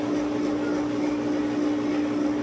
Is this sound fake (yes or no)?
no